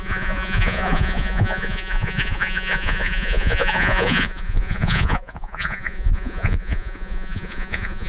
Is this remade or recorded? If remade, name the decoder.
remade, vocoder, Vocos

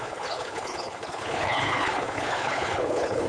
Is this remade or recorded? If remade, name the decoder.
remade, codec, HILCodec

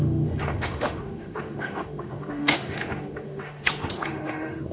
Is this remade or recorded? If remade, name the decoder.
remade, autoencoder, DAC-VAE